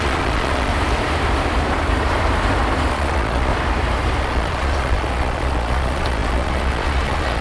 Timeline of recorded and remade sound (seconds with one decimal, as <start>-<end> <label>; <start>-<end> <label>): 0.0-0.7 remade; 0.7-2.9 recorded; 2.9-3.5 remade; 3.5-4.2 recorded; 4.2-7.4 remade